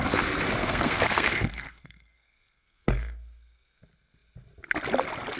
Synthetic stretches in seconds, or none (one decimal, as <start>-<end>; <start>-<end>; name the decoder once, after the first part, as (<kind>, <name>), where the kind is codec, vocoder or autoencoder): 0.6-3.8 (codec, SNAC)